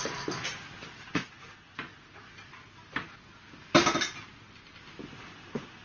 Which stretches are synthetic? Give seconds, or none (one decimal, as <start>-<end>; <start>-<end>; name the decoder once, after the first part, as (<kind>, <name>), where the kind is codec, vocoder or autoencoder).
none